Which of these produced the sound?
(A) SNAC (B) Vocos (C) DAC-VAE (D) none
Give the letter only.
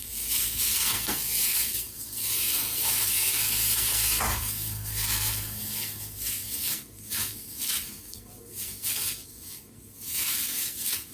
A